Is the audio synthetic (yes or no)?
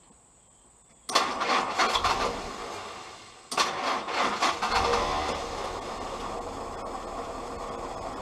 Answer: no